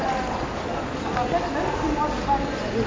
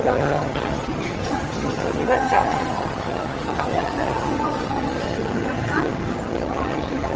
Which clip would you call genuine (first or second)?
first